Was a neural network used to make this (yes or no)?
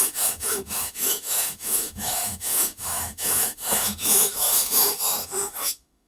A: yes